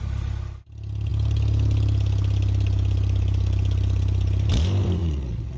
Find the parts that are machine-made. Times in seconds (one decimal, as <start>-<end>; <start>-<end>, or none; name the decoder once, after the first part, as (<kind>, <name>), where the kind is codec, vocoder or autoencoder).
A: 5.0-5.6 (vocoder, Vocos)